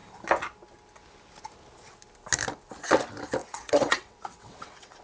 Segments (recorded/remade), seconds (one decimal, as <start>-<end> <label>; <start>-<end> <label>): 0.0-3.4 recorded; 3.4-5.0 remade